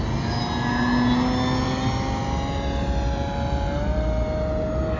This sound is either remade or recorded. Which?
recorded